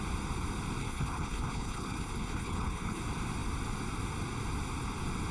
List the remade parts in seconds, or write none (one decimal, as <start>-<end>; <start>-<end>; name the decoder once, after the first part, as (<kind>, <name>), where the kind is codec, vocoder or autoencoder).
0.8-3.0 (codec, HILCodec)